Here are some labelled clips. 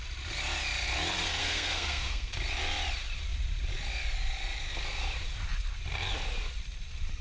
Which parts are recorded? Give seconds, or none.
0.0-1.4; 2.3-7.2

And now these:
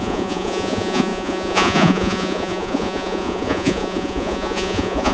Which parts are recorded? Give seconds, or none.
none

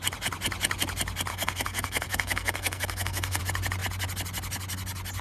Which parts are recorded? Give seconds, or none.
0.0-1.3; 3.4-5.2

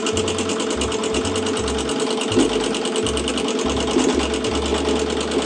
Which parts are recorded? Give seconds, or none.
0.0-5.5